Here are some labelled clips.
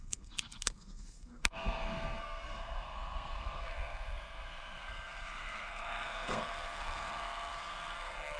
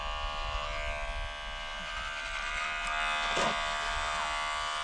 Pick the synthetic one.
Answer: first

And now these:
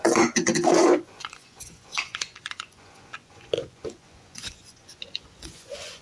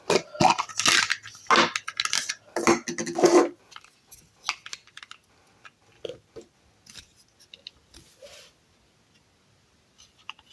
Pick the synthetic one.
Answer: first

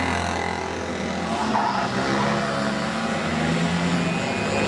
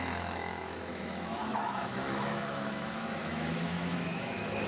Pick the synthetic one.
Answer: second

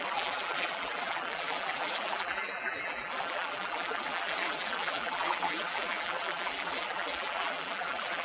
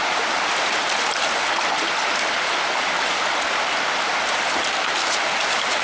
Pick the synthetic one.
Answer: first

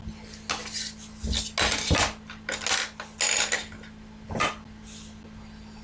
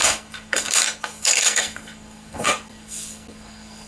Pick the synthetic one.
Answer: second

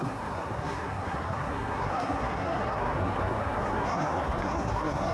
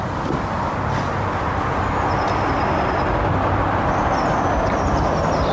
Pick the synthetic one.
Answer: first